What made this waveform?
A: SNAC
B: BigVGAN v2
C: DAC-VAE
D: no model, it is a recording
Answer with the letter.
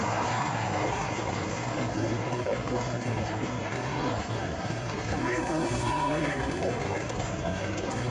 A